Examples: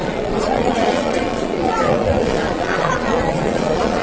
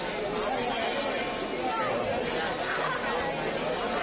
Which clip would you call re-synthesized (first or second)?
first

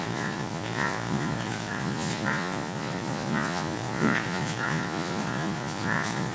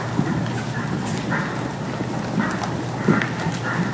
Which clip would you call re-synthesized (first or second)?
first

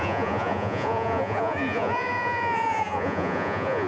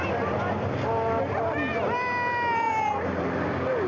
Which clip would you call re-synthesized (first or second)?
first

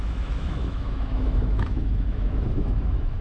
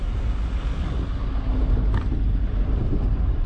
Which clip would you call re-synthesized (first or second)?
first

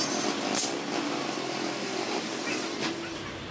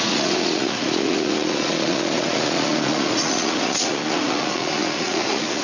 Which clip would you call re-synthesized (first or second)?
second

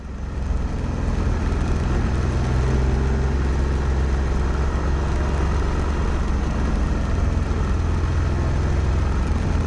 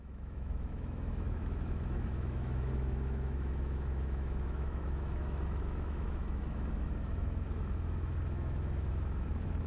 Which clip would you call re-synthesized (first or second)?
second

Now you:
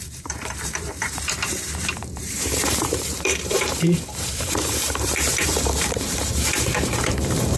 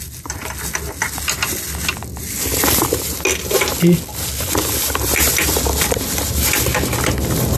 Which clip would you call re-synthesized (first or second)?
first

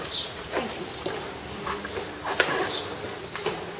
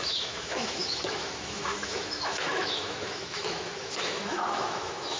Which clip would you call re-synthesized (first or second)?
second